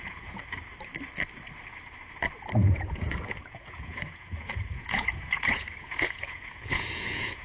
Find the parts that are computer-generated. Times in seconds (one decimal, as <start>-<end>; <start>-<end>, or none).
0.0-0.4; 2.6-7.4